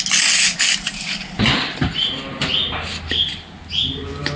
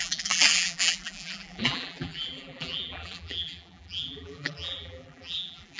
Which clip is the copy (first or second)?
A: second